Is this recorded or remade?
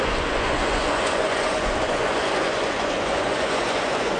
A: remade